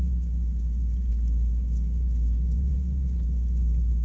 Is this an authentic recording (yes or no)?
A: yes